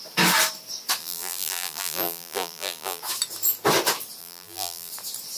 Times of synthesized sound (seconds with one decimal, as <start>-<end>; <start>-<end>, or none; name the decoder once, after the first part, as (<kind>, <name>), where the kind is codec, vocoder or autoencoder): 1.0-3.0 (vocoder, BigVGAN v2); 4.2-4.9